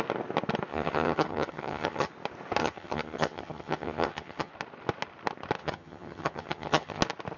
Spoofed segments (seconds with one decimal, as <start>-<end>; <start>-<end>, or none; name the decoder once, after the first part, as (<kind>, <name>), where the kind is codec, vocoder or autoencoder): 0.7-2.1 (vocoder, HiFi-GAN); 2.6-4.5; 5.6-7.0